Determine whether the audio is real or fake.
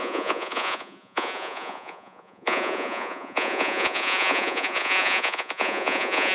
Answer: fake